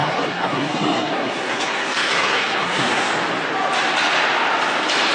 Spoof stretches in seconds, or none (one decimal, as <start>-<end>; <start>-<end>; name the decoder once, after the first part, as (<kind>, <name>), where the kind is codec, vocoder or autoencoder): 0.0-3.1 (codec, SNAC)